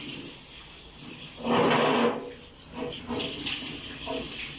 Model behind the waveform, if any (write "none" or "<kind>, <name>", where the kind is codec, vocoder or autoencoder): none